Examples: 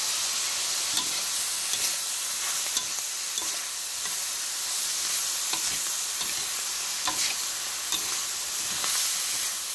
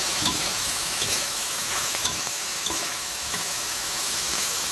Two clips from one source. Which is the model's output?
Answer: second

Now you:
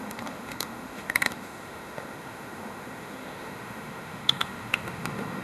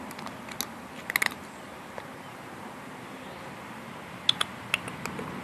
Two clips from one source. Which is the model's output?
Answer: first